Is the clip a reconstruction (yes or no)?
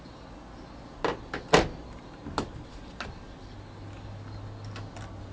no